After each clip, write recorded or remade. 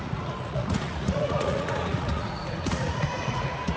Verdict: remade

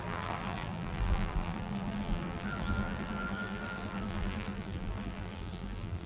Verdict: remade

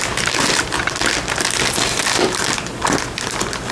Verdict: recorded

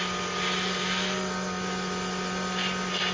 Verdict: recorded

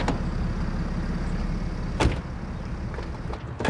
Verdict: recorded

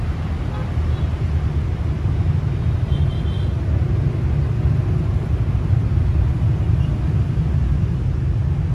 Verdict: recorded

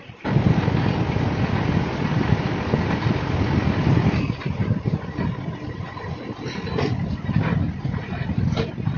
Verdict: recorded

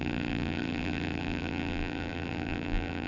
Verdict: remade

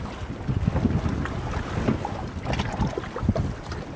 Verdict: recorded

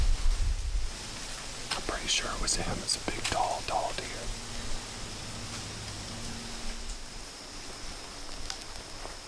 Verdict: recorded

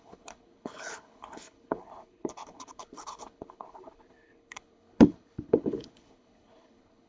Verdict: remade